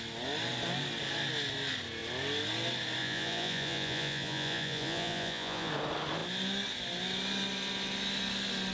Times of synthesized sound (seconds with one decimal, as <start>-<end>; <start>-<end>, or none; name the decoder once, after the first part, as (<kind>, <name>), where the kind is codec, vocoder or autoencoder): 3.0-5.7 (vocoder, Vocos)